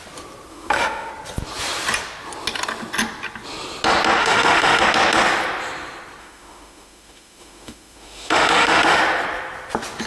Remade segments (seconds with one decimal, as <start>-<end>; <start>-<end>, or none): 0.5-1.1; 4.2-4.8; 6.2-9.0

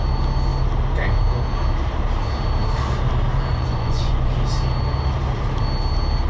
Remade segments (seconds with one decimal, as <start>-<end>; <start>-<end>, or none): 3.5-4.3

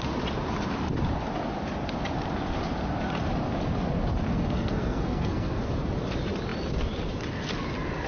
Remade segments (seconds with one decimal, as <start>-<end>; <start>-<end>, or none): 4.3-5.7

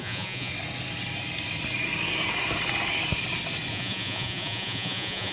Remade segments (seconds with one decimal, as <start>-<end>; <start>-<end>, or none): 0.0-0.5; 3.7-5.3

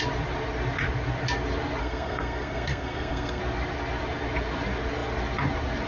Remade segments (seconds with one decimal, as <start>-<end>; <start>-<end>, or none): 1.8-3.4

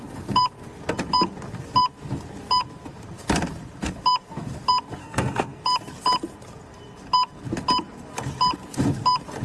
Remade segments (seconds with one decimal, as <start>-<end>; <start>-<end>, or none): 5.0-5.6

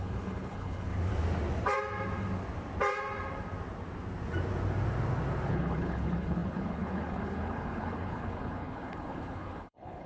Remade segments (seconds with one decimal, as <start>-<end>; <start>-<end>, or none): 0.0-0.9; 5.5-10.1

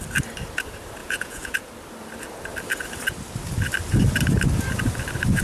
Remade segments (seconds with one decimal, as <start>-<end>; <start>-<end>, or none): 1.0-1.7